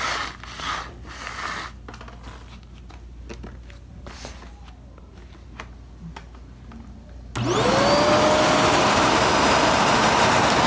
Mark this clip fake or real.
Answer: real